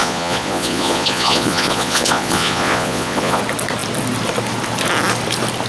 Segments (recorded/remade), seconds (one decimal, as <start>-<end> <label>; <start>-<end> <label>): 0.0-3.4 remade; 3.4-5.7 recorded